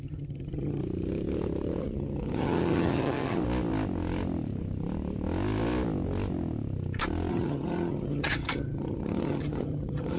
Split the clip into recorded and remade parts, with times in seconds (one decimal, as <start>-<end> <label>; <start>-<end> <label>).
0.0-0.8 remade; 0.8-1.8 recorded; 1.8-3.4 remade; 3.4-7.3 recorded; 7.3-10.2 remade